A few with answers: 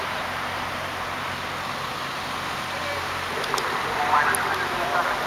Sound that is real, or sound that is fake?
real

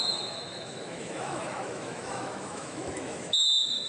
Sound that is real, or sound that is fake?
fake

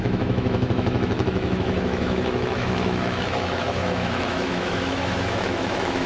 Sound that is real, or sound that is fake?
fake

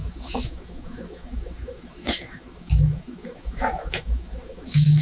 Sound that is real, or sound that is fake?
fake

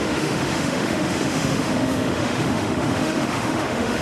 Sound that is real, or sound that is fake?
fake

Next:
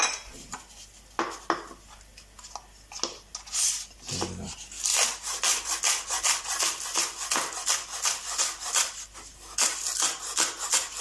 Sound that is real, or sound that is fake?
real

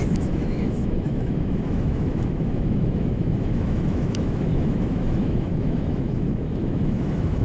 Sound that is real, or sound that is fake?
fake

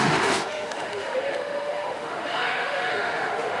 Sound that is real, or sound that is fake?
fake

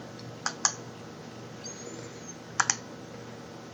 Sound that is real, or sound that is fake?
real